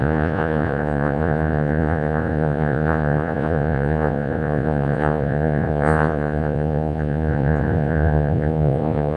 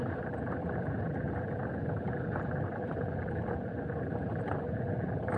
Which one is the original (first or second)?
second